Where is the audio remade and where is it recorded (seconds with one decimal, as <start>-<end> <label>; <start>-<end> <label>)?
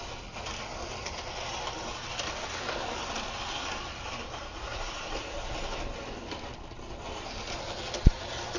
0.0-4.4 recorded; 4.4-5.5 remade; 5.5-8.6 recorded